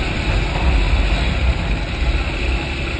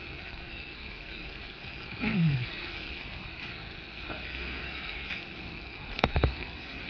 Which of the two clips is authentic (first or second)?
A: first